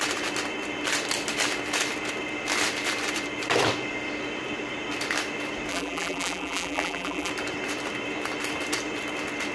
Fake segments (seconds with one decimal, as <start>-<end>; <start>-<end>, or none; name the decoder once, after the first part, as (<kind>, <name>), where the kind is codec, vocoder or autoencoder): 5.7-7.3 (vocoder, BigVGAN v2)